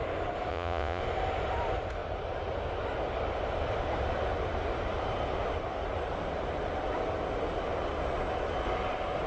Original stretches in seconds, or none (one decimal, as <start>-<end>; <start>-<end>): 0.0-0.5; 1.0-9.3